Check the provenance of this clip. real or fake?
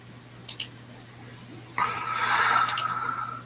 real